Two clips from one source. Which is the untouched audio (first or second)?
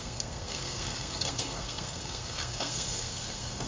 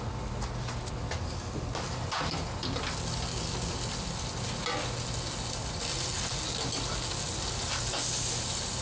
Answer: second